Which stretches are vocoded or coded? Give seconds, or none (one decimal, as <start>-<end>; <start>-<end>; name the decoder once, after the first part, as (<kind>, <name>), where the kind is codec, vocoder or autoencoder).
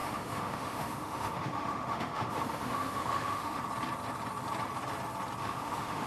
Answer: 0.0-3.6 (autoencoder, DAC-VAE); 5.4-6.1